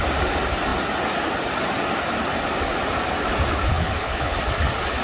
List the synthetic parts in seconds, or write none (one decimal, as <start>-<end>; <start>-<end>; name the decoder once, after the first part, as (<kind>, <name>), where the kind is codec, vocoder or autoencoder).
3.7-4.4 (codec, HILCodec)